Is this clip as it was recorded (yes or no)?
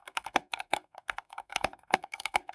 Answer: no